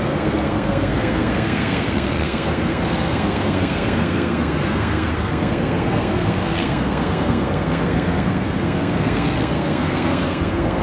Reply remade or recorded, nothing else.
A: remade